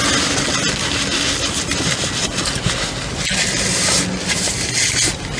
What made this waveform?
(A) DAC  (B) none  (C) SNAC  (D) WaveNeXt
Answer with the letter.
B